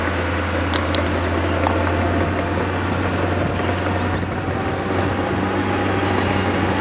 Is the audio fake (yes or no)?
no